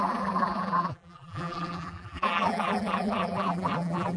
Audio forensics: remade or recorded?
remade